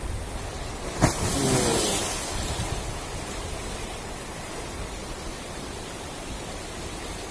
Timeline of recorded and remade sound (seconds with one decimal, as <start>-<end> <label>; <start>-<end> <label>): 0.0-7.3 recorded